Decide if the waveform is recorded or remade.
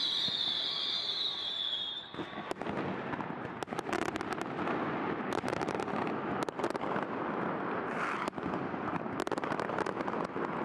recorded